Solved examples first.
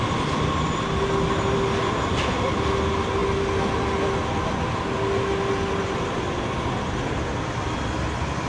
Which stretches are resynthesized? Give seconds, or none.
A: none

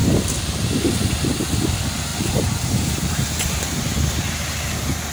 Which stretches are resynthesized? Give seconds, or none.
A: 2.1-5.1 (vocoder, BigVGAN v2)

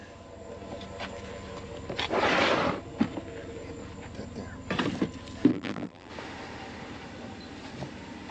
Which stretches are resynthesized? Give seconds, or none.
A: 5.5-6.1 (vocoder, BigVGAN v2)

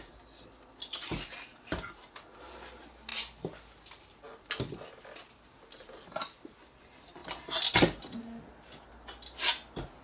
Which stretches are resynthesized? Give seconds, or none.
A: none